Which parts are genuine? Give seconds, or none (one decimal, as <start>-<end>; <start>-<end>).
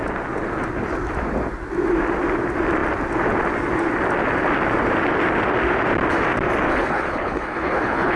0.0-6.7